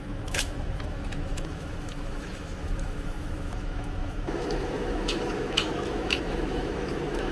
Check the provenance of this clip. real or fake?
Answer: fake